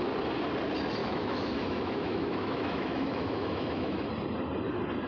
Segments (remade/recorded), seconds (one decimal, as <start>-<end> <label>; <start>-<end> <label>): 0.0-1.0 recorded; 1.0-4.1 remade; 4.1-5.1 recorded